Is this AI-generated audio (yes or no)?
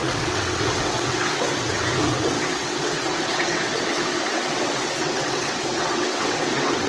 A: yes